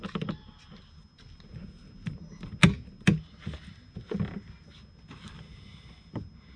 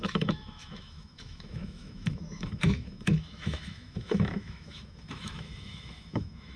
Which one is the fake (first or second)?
second